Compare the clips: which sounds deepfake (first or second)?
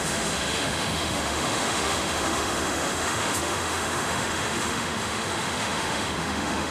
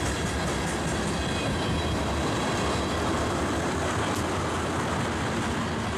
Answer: first